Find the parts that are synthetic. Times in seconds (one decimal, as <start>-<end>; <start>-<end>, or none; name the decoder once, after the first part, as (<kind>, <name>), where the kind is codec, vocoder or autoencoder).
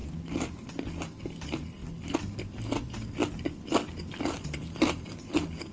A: none